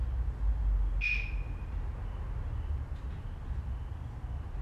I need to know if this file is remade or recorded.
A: recorded